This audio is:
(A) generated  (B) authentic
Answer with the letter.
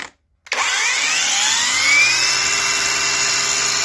B